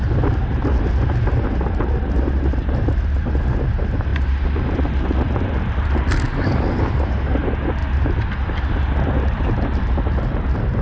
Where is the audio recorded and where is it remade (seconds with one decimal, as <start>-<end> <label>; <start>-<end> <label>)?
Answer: 0.0-10.8 recorded